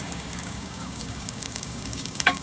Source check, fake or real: fake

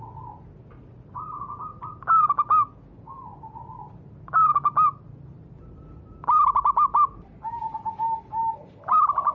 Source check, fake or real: real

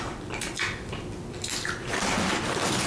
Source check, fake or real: real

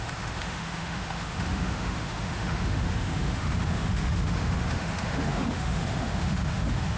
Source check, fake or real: fake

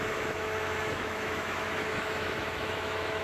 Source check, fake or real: fake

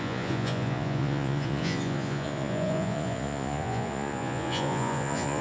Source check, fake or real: fake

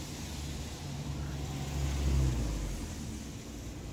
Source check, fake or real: real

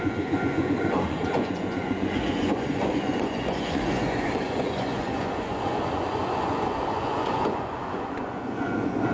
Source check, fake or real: fake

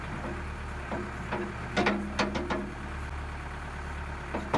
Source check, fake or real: real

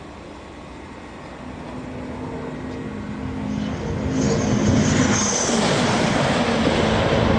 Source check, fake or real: real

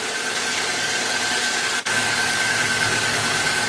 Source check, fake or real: fake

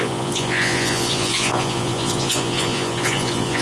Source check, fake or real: fake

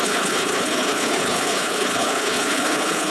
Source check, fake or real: fake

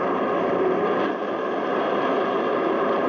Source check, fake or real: real